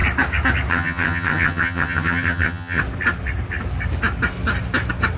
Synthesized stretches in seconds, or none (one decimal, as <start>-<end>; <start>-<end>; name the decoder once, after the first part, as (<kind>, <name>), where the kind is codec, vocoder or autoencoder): 0.7-2.8 (vocoder, HiFi-GAN)